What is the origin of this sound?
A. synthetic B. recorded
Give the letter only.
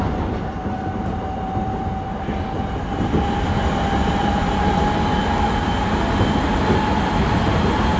B